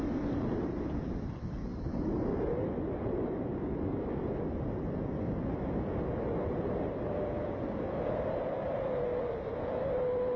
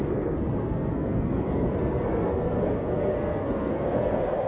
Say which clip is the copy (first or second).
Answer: second